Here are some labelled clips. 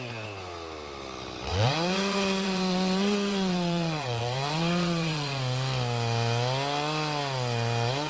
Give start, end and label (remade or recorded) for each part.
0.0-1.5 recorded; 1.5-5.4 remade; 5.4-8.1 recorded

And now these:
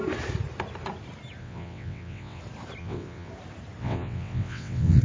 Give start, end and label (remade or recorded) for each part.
0.0-1.4 recorded; 1.4-2.4 remade; 2.4-2.8 recorded; 2.8-3.3 remade; 3.3-3.8 recorded; 3.8-5.0 remade